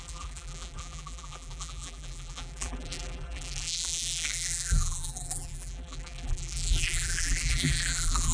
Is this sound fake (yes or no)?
yes